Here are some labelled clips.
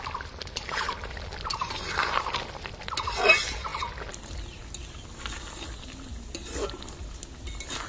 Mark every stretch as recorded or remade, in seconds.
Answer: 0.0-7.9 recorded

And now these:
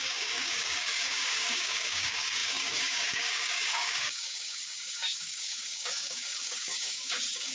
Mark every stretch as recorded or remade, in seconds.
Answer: 0.0-7.5 remade